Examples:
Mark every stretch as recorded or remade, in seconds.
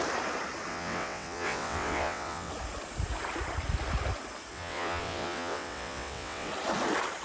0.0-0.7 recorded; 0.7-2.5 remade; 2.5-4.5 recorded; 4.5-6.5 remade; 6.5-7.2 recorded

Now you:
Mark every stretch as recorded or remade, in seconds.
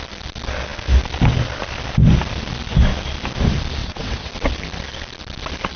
0.0-3.8 recorded; 3.8-4.3 remade; 4.3-5.8 recorded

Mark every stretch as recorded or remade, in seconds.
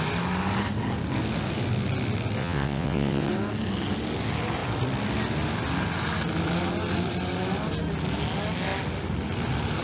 0.0-2.4 recorded; 2.4-3.3 remade; 3.3-9.8 recorded